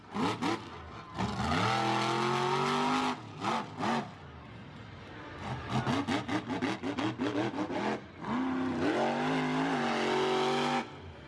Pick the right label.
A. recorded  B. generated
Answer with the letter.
A